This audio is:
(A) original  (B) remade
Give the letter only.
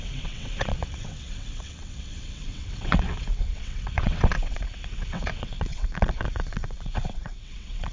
B